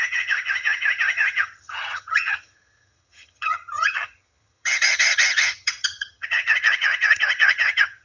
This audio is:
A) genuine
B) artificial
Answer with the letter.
B